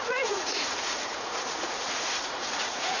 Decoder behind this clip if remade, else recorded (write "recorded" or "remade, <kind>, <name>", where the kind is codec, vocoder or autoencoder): remade, vocoder, Vocos